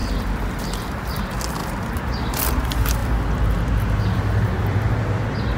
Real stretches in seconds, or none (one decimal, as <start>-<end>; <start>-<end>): 0.0-5.6